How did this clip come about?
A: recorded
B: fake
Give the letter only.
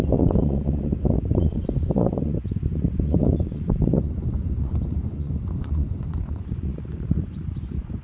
B